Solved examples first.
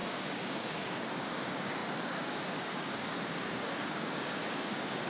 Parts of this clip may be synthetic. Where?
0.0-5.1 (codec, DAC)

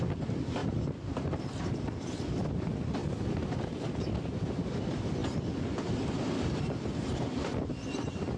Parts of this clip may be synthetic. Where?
0.0-0.6 (vocoder, BigVGAN v2); 1.4-5.2; 5.8-8.4

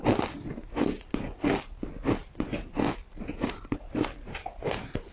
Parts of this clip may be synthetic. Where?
none

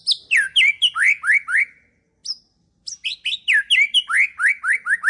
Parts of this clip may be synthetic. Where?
none

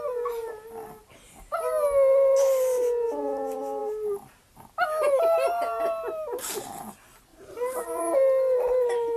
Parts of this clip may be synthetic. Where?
7.3-8.0 (vocoder, BigVGAN v2)